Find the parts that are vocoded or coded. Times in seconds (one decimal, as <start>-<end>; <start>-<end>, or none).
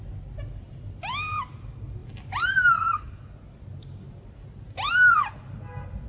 none